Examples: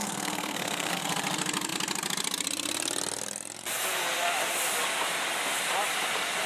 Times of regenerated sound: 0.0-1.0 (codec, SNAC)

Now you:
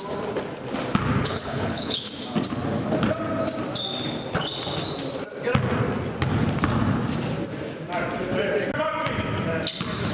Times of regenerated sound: 1.2-2.1 (codec, HILCodec)